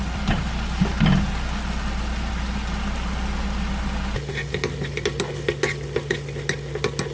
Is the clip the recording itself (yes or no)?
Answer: yes